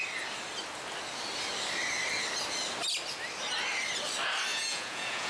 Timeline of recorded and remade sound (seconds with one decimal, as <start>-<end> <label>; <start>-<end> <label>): 0.0-4.5 recorded; 4.5-5.3 remade